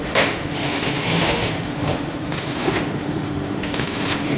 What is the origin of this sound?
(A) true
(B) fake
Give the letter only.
B